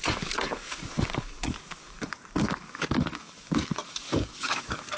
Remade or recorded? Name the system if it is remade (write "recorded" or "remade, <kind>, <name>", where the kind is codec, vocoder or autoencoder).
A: remade, codec, DAC